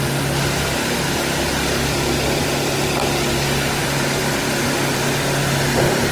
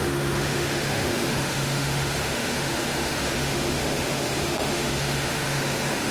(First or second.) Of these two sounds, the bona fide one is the first